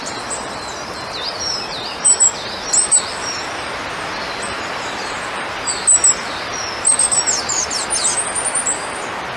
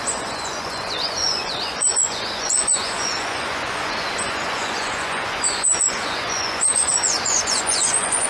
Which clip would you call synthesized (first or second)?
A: second